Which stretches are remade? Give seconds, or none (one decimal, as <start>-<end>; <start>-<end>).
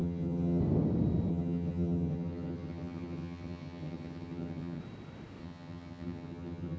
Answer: 0.0-0.6; 1.3-4.8; 5.4-6.8